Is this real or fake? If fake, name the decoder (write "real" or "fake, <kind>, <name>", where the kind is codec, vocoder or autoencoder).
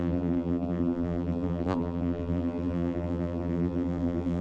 fake, vocoder, BigVGAN v2